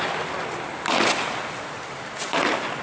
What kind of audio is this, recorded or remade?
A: recorded